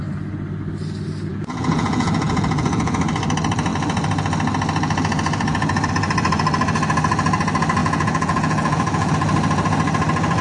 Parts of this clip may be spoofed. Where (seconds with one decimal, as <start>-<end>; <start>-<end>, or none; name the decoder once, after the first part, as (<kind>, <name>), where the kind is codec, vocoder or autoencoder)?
1.3-3.0 (vocoder, Vocos); 7.8-9.1